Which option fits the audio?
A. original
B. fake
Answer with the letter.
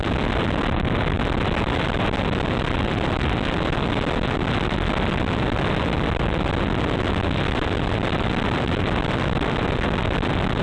A